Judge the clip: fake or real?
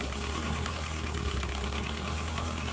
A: fake